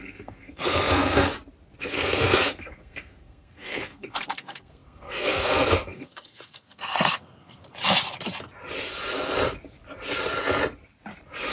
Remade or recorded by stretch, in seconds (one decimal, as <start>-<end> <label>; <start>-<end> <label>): 0.0-1.3 remade; 1.3-1.8 recorded; 1.8-7.6 remade; 7.6-11.5 recorded